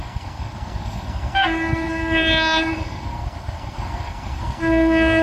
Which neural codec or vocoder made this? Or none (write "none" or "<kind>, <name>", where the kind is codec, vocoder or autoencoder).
codec, SNAC